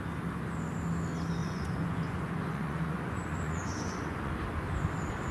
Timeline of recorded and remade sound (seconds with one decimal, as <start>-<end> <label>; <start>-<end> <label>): 0.0-1.4 recorded; 1.4-4.3 remade; 4.3-5.3 recorded

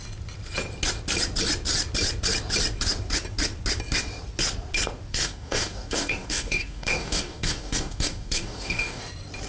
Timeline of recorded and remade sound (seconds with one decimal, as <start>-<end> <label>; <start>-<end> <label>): 0.0-5.1 recorded; 5.1-9.0 remade; 9.0-9.5 recorded